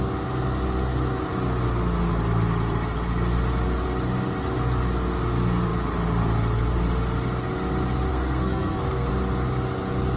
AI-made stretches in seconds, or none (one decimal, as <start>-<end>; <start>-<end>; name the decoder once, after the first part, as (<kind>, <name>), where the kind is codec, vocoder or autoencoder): 8.1-9.1 (codec, SNAC)